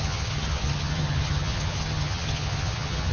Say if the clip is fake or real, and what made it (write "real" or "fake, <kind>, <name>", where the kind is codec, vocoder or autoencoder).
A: fake, vocoder, HiFi-GAN